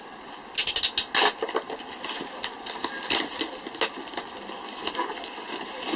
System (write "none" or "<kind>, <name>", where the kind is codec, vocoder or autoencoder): none